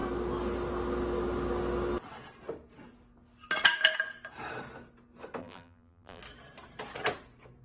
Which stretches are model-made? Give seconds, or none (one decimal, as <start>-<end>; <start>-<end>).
5.4-6.2